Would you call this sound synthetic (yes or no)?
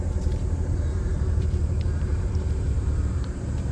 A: yes